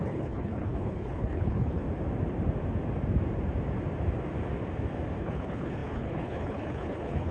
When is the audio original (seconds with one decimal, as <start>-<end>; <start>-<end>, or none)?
1.8-5.2